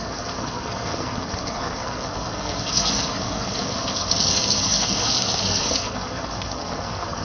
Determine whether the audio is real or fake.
fake